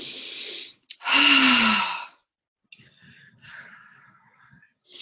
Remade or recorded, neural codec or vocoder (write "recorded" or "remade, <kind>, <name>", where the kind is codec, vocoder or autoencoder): recorded